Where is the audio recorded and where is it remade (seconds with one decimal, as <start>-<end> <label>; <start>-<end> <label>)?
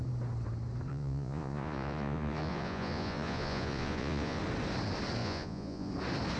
0.0-0.9 recorded; 0.9-4.4 remade; 4.4-5.2 recorded; 5.2-5.9 remade; 5.9-6.4 recorded